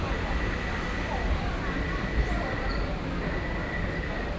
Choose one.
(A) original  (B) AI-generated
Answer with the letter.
A